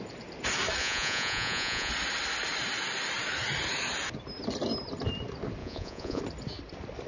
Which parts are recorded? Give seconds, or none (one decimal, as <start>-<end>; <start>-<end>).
0.0-0.8; 1.9-5.6; 6.2-7.1